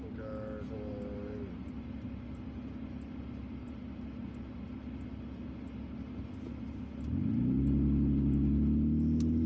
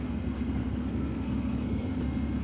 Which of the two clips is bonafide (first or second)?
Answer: first